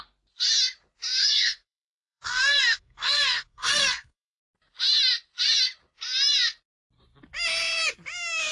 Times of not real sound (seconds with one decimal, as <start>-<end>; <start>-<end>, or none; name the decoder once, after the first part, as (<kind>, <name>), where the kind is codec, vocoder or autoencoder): 1.2-4.4 (codec, SNAC)